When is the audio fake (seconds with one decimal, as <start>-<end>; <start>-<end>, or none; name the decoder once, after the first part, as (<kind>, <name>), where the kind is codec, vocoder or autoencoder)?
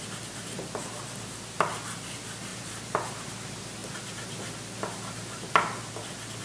2.5-3.3 (vocoder, BigVGAN v2)